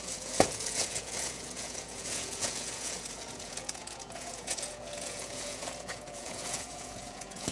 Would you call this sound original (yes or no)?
no